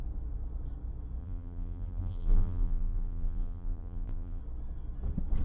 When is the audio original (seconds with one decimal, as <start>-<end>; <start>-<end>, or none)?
0.0-1.2; 4.4-5.4